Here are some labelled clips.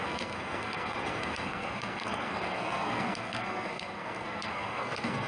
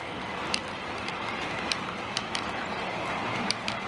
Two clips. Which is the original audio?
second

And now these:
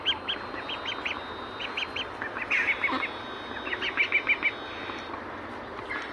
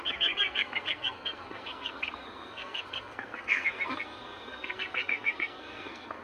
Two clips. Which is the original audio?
first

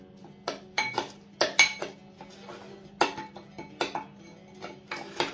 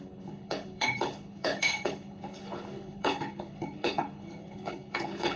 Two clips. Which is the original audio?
first